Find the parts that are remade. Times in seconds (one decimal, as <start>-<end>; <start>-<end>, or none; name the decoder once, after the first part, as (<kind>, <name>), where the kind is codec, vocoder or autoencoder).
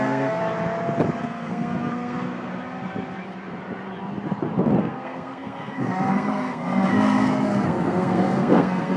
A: 0.0-0.4 (codec, SNAC); 1.2-2.5; 4.8-9.0